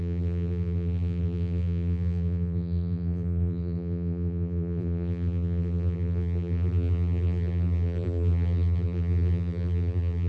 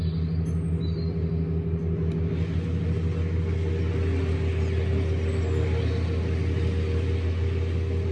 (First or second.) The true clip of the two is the second